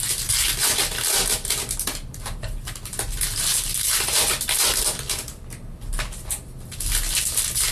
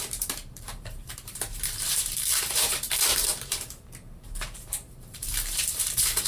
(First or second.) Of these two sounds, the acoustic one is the first